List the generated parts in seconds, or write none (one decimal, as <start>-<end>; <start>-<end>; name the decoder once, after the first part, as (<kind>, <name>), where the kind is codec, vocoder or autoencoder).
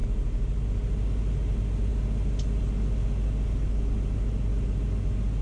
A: none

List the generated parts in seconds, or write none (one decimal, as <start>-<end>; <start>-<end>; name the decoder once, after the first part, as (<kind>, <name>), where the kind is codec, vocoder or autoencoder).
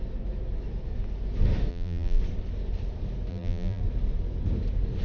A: 1.7-2.2 (vocoder, BigVGAN v2); 3.3-3.8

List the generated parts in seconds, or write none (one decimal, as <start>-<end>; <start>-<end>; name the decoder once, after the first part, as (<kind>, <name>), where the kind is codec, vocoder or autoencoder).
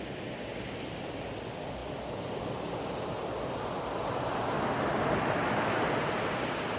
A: none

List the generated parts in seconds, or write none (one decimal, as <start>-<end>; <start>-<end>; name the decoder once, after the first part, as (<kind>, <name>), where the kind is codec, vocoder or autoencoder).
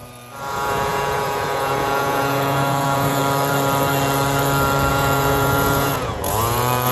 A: 0.5-3.2 (vocoder, Vocos); 4.9-6.9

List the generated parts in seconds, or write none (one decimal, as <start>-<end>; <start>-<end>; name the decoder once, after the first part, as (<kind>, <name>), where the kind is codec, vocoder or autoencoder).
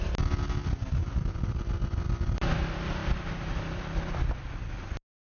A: 1.0-1.8 (vocoder, BigVGAN v2)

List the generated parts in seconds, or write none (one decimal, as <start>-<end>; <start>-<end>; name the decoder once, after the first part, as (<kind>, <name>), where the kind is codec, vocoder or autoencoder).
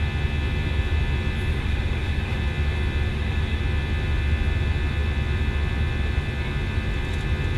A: 1.5-2.4 (autoencoder, DAC-VAE); 3.1-3.6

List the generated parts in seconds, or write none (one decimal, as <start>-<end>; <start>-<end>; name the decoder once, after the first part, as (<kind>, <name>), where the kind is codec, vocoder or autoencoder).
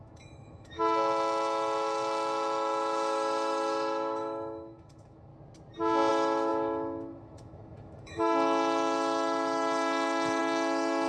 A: 0.0-5.3 (autoencoder, DAC-VAE); 6.1-11.1